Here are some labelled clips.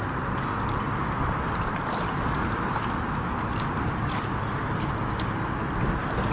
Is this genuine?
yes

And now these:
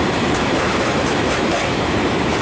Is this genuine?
no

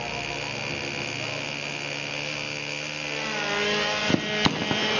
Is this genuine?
yes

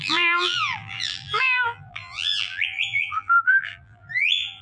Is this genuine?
no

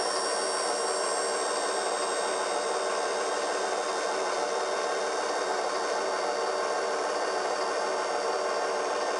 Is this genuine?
no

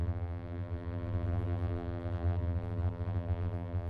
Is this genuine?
no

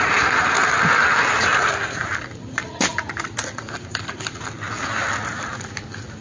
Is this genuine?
yes